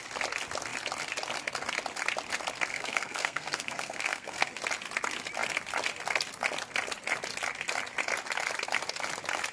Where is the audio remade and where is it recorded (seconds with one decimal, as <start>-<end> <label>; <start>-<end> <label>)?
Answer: 0.0-2.7 recorded; 2.7-4.5 remade; 4.5-9.5 recorded